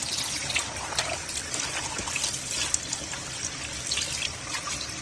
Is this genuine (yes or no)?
yes